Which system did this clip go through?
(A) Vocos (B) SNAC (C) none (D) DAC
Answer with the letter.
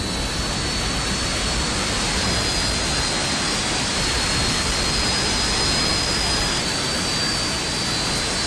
C